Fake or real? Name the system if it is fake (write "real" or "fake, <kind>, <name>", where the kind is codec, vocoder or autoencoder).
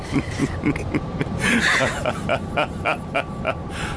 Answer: real